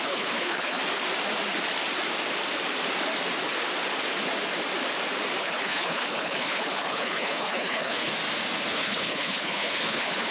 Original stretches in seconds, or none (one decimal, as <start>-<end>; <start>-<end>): 0.8-5.4; 8.1-8.7